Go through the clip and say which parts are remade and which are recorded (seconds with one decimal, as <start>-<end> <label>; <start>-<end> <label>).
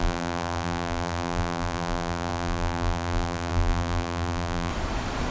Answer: 0.0-4.7 remade; 4.7-5.3 recorded